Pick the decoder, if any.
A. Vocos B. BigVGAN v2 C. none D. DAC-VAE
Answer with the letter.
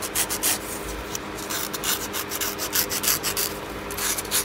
C